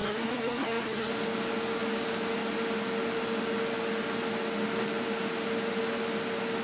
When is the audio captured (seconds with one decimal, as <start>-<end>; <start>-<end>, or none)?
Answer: 1.1-6.6